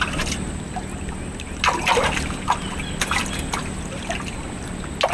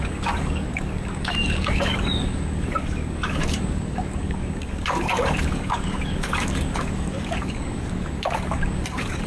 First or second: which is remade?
second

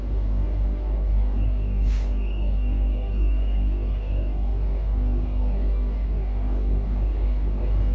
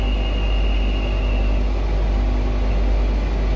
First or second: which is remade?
first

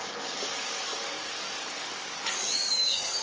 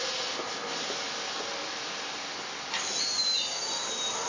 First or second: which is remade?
first